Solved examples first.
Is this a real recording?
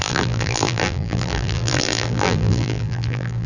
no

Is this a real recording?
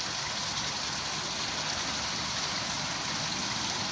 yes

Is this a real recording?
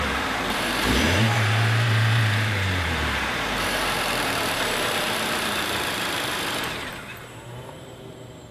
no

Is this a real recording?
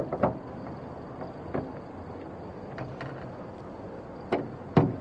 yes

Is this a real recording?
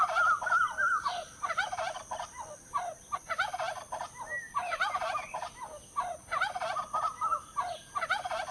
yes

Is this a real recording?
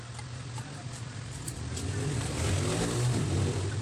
no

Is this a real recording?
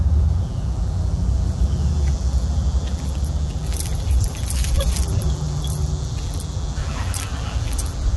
no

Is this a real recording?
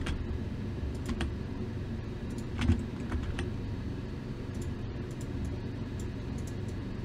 no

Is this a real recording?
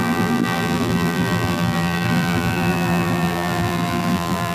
no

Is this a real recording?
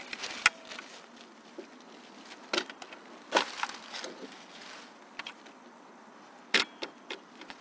yes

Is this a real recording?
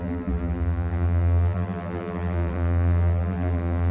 no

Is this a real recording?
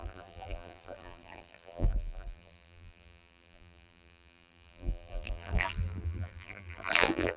no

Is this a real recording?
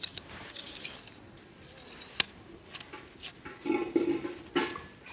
yes